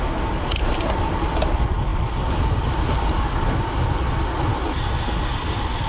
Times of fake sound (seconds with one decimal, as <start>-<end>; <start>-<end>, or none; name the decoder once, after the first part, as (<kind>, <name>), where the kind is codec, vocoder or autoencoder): none